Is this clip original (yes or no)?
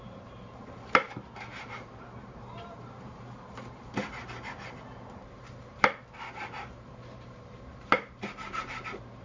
no